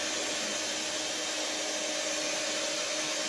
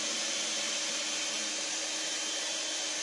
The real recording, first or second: first